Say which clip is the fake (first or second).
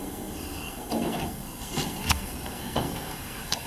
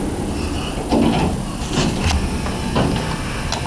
first